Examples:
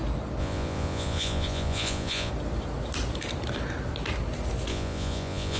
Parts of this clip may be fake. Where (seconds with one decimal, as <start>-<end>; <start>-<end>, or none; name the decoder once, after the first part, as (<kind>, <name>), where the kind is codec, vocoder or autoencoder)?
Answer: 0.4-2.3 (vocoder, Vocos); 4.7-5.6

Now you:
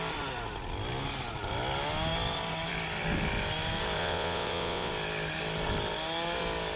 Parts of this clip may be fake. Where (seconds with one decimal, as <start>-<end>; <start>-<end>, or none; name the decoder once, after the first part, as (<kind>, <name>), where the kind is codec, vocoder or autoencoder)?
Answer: 4.0-4.9 (vocoder, WaveNeXt)

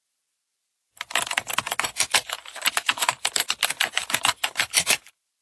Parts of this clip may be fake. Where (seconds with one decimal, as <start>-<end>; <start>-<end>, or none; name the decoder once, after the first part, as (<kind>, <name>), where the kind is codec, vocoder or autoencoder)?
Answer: none

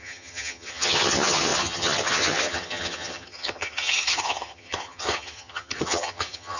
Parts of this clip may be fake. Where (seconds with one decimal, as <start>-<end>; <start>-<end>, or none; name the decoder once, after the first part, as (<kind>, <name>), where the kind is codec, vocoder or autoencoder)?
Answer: 0.0-6.6 (vocoder, HiFi-GAN)